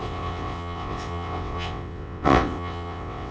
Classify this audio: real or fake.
fake